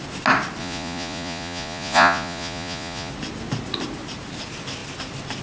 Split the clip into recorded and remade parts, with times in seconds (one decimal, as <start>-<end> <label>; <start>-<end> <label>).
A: 0.0-0.6 recorded; 0.6-3.1 remade; 3.1-5.4 recorded